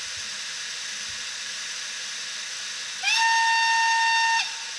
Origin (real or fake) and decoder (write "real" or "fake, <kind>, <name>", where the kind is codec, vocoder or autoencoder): real